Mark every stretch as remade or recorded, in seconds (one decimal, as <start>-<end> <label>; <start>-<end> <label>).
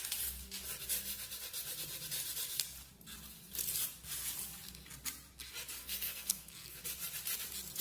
0.0-5.8 recorded; 5.8-6.8 remade; 6.8-7.8 recorded